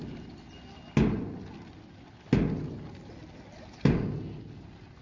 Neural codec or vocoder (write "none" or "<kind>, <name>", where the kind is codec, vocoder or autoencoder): none